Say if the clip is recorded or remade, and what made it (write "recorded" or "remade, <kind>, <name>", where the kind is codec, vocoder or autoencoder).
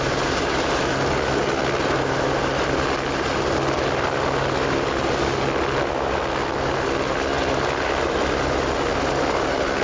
recorded